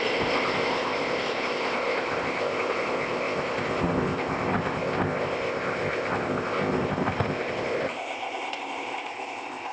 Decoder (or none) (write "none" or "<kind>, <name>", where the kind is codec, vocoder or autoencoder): codec, ZipCodec